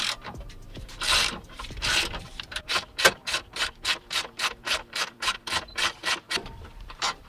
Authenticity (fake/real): fake